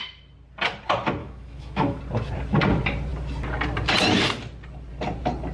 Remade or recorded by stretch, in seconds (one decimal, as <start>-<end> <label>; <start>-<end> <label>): 0.0-1.2 recorded; 1.2-2.0 remade; 2.0-5.5 recorded